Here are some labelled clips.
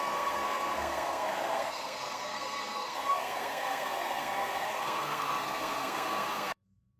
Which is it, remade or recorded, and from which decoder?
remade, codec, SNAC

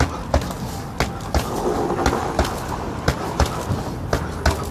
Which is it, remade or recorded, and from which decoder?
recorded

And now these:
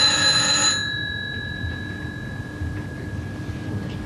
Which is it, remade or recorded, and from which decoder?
recorded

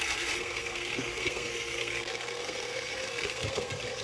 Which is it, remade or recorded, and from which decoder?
remade, codec, SNAC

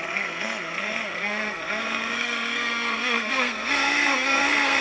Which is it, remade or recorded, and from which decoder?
remade, codec, SNAC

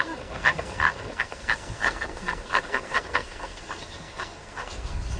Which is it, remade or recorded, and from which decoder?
remade, codec, SNAC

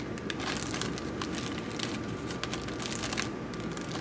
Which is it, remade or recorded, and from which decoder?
recorded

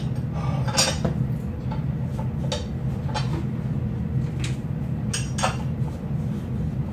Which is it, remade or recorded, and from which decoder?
recorded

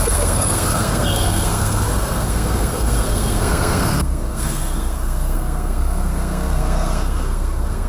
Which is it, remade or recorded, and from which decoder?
remade, codec, SNAC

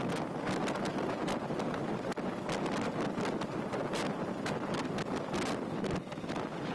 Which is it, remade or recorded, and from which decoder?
recorded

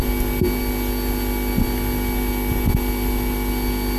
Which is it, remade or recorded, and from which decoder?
recorded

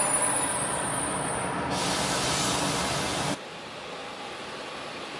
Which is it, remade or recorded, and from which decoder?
recorded